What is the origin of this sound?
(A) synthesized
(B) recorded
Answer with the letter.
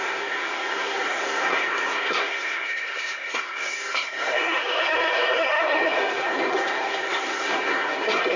A